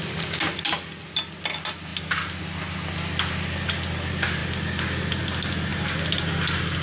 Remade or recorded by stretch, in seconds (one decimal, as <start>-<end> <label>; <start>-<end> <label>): 0.0-6.8 recorded

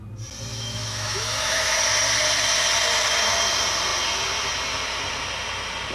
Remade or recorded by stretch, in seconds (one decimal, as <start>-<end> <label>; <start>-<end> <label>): 0.0-0.5 recorded; 0.5-1.8 remade; 1.8-5.9 recorded

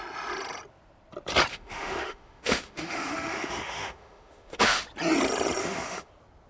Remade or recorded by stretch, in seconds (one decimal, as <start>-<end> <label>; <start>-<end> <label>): 0.0-1.5 recorded; 1.5-4.8 remade; 4.8-5.6 recorded; 5.6-6.1 remade; 6.1-6.5 recorded

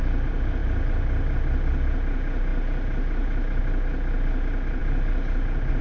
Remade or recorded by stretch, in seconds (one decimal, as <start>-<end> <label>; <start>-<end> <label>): 0.0-5.8 recorded

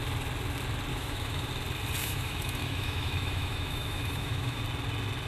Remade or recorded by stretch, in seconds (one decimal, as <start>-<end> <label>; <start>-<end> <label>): 0.0-0.9 recorded; 0.9-1.5 remade; 1.5-2.0 recorded; 2.0-4.6 remade; 4.6-5.3 recorded

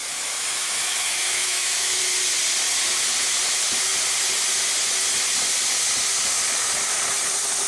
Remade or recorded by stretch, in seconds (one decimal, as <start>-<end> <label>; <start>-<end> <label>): 0.0-2.0 remade; 2.0-7.7 recorded

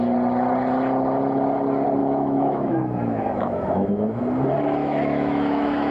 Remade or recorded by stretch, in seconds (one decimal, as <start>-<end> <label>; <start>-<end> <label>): 0.0-2.0 recorded; 2.0-4.2 remade; 4.2-4.8 recorded; 4.8-5.9 remade

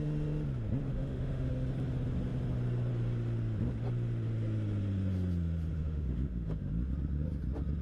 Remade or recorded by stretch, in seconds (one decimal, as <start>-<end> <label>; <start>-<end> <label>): 0.0-0.9 recorded; 0.9-1.5 remade; 1.5-5.7 recorded; 5.7-6.7 remade; 6.7-7.8 recorded